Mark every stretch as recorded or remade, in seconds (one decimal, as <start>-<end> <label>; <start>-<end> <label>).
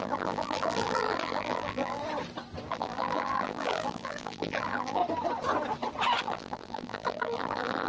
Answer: 0.0-2.0 remade; 2.0-2.7 recorded; 2.7-5.0 remade; 5.0-6.2 recorded; 6.2-7.9 remade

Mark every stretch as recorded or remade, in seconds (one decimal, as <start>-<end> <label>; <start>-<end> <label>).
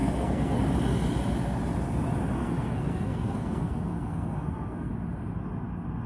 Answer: 0.0-0.6 remade; 0.6-2.4 recorded; 2.4-4.9 remade; 4.9-6.1 recorded